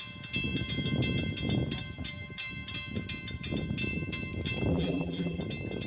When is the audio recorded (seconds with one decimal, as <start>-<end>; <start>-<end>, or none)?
0.0-4.7; 5.4-5.9